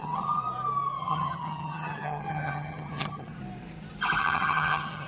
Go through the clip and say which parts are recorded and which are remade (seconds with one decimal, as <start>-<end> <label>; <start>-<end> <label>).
0.0-0.4 remade; 0.4-1.0 recorded; 1.0-3.4 remade; 3.4-4.2 recorded; 4.2-5.1 remade